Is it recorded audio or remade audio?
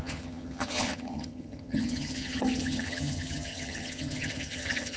remade